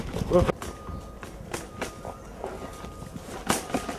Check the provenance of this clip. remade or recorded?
recorded